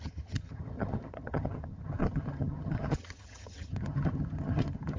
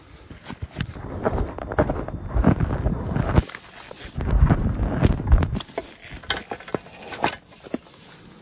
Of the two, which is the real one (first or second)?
second